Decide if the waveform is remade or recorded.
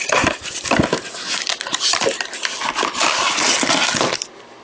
recorded